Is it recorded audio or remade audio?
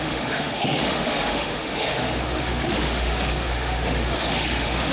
remade